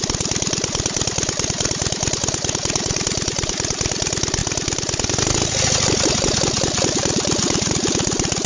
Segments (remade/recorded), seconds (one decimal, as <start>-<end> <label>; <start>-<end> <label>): 0.0-8.5 recorded